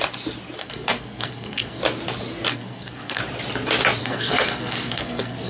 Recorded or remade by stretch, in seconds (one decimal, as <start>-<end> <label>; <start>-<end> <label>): 0.0-0.6 recorded; 0.6-1.8 remade; 1.8-2.5 recorded; 2.5-3.2 remade; 3.2-4.0 recorded; 4.0-5.5 remade